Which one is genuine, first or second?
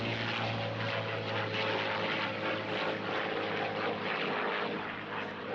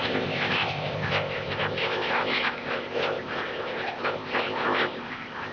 first